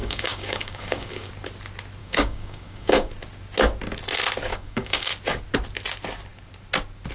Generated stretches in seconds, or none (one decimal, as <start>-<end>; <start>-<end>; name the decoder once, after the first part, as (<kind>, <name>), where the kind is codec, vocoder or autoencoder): 0.0-1.3 (codec, DAC); 2.0-3.1; 4.5-5.1